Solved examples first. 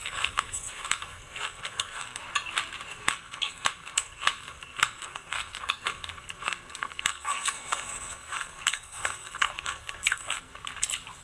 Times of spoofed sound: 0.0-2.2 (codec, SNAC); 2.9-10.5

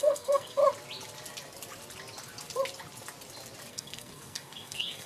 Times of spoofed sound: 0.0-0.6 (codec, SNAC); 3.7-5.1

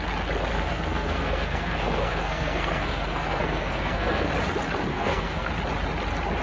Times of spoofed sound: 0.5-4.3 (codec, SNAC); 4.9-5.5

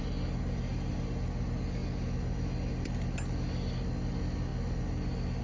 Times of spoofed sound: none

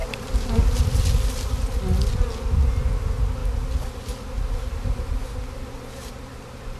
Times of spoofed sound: none

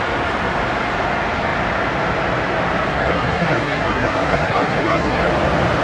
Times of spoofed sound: 2.9-5.3 (codec, SNAC)